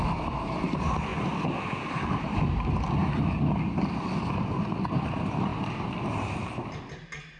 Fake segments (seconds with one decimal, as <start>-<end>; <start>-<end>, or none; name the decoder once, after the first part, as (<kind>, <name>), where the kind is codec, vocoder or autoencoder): none